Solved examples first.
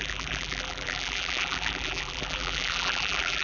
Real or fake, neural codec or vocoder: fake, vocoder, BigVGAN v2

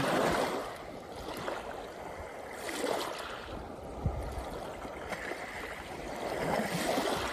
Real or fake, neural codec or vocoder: real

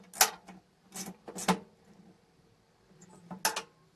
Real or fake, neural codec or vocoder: real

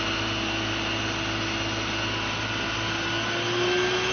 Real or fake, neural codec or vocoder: real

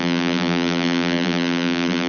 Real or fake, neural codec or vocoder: fake, vocoder, BigVGAN v2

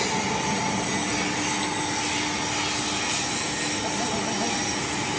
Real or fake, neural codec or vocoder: real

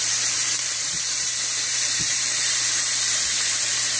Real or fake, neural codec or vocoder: fake, vocoder, BigVGAN v2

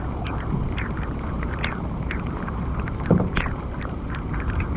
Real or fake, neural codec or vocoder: fake, vocoder, BigVGAN v2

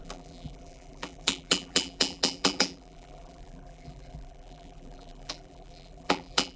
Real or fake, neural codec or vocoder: fake, vocoder, BigVGAN v2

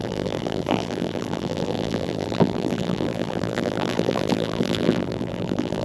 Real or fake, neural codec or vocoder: fake, vocoder, BigVGAN v2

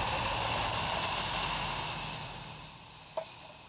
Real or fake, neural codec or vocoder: real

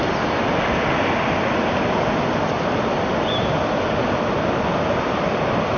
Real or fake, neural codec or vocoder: real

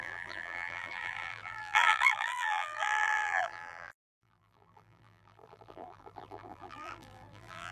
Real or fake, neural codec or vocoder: fake, vocoder, BigVGAN v2